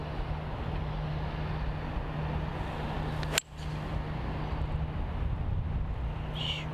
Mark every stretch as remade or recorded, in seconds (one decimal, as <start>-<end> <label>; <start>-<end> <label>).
0.0-6.7 recorded